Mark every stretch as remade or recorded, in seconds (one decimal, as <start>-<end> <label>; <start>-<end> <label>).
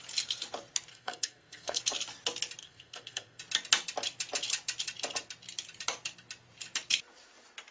0.0-0.9 recorded; 0.9-1.8 remade; 1.8-2.6 recorded; 2.6-3.4 remade; 3.4-7.7 recorded